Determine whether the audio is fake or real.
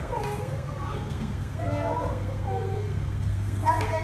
fake